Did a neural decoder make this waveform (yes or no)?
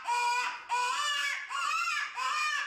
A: no